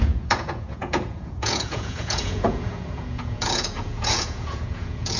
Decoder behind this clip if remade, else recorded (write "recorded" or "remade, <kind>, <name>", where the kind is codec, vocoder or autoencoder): remade, vocoder, Vocos